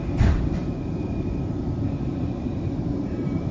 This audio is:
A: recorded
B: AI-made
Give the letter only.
B